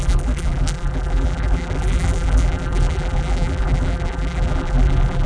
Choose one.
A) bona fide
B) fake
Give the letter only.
B